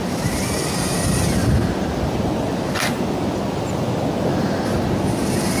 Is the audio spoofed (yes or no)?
no